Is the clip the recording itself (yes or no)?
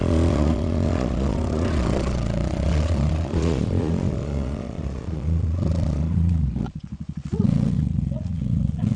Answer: no